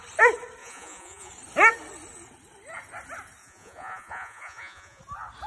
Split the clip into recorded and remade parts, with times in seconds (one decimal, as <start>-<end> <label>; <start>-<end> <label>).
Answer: 0.0-0.6 recorded; 0.6-1.3 remade; 1.3-3.4 recorded; 3.4-5.0 remade; 5.0-5.5 recorded

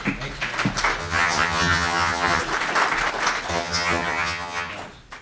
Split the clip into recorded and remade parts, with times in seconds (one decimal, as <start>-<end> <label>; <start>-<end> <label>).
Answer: 0.0-1.0 recorded; 1.0-2.4 remade; 2.4-3.5 recorded; 3.5-4.7 remade; 4.7-5.2 recorded

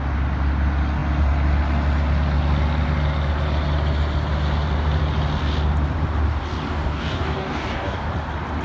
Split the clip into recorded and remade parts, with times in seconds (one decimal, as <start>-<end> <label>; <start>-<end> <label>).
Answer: 0.0-6.7 recorded; 6.7-8.1 remade; 8.1-8.6 recorded

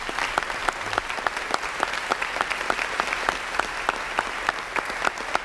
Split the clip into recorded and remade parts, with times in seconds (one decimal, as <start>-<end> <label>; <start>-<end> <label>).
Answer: 0.0-5.4 recorded

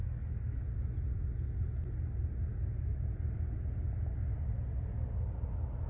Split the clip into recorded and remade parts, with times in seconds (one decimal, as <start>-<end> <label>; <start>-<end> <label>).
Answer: 0.0-0.6 remade; 0.6-5.9 recorded